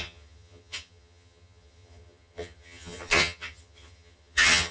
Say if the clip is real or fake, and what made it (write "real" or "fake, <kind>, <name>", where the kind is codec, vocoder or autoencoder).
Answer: fake, vocoder, HiFi-GAN